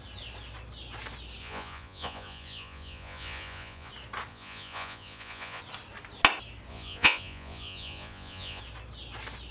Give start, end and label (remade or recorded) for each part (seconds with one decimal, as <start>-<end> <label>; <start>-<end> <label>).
0.0-1.4 recorded; 1.4-3.9 remade; 3.9-4.3 recorded; 4.3-5.6 remade; 5.6-6.7 recorded; 6.7-8.6 remade; 8.6-9.5 recorded